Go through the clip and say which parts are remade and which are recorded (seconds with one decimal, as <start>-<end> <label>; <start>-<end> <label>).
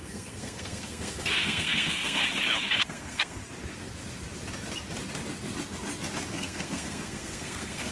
0.0-2.2 remade; 2.2-2.8 recorded; 2.8-3.4 remade; 3.4-6.3 recorded; 6.3-7.9 remade